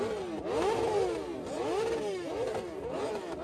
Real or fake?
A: real